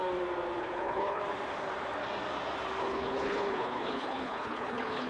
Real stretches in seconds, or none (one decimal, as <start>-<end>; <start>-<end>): 0.0-0.6; 1.2-2.8